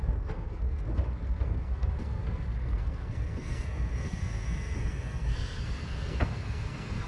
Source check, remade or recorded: remade